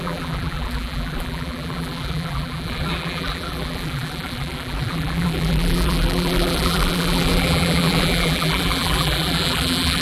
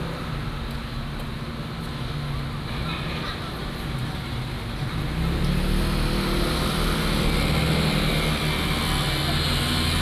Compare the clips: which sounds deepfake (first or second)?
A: first